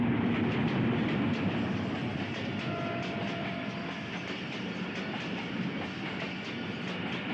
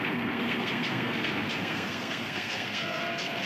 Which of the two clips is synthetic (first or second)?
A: second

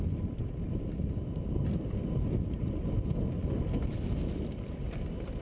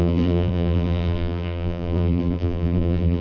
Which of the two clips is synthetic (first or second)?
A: second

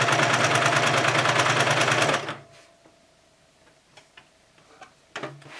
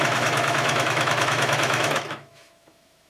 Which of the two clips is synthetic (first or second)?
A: second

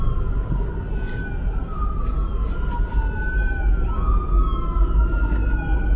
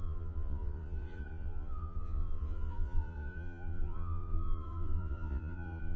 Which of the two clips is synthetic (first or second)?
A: second